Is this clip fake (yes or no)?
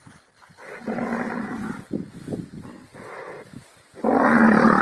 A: no